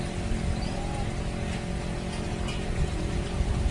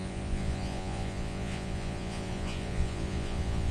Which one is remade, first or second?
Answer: second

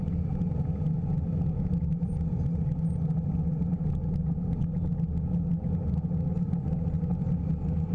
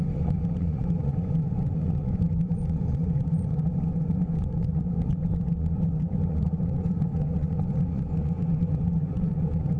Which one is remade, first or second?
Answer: second